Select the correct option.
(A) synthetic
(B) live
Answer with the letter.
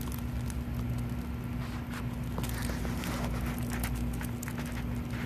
B